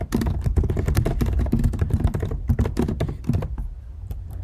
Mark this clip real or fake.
fake